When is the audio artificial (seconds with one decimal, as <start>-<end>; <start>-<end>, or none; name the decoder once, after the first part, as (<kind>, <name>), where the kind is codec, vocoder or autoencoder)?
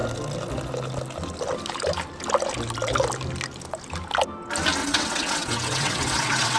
4.8-6.6 (vocoder, WaveNeXt)